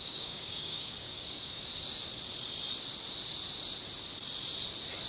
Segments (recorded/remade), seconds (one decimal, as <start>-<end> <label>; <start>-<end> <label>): 0.0-1.7 remade; 1.7-5.1 recorded